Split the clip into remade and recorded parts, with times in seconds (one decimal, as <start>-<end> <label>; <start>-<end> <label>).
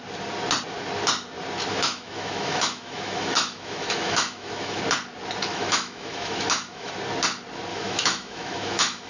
0.0-1.7 recorded; 1.7-4.8 remade; 4.8-5.5 recorded; 5.5-6.9 remade; 6.9-7.7 recorded; 7.7-9.1 remade